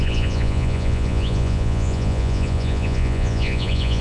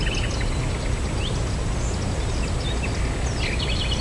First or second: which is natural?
second